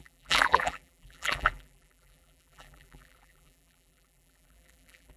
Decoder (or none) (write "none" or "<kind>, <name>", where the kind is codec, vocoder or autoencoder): vocoder, BigVGAN v2